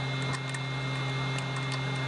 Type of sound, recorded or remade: recorded